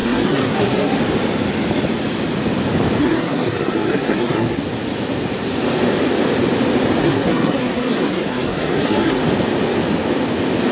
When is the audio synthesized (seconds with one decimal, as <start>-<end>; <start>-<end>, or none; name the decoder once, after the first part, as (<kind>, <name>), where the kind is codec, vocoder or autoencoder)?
0.0-1.0 (codec, SNAC); 3.0-4.6; 7.0-9.2

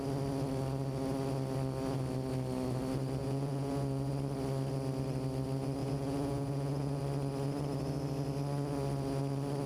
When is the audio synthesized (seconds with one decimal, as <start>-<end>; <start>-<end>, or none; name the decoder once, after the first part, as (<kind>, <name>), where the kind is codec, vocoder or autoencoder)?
3.2-4.1 (vocoder, Vocos); 5.8-7.0

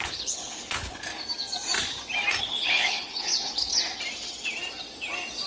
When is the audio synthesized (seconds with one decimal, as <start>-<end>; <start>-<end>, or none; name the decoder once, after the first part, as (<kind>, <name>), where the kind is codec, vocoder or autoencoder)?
0.0-1.1 (codec, HILCodec); 2.4-3.7

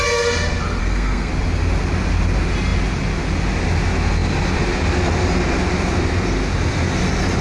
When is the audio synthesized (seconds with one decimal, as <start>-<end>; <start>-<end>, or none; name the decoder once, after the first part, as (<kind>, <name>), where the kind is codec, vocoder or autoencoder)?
0.8-1.3 (codec, SNAC)